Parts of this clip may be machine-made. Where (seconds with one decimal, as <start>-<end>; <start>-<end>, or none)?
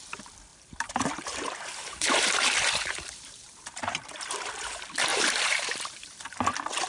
0.5-4.3; 5.1-6.1